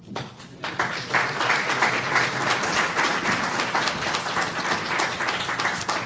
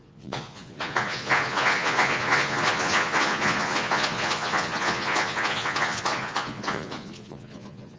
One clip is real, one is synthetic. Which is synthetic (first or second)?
second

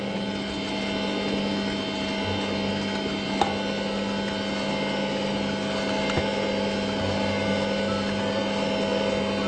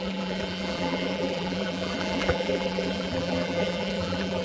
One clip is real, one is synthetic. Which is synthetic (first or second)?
second